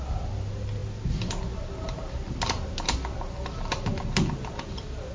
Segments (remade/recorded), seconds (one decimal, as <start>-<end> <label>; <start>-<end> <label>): 0.0-5.1 recorded